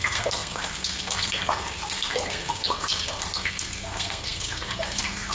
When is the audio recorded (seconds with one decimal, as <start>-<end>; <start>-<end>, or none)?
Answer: none